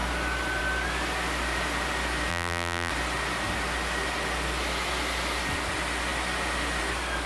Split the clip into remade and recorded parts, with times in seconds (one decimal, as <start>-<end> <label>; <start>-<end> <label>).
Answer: 0.0-2.3 recorded; 2.3-2.9 remade; 2.9-7.3 recorded